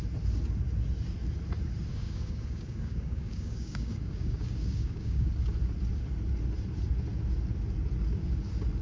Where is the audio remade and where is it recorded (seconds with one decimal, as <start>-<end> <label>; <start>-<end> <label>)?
0.0-1.9 recorded; 1.9-5.3 remade; 5.3-8.8 recorded